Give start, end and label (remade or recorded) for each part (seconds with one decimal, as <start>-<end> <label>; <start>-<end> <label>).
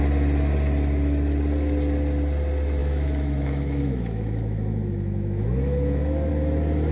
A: 0.0-2.8 recorded; 2.8-6.3 remade; 6.3-6.9 recorded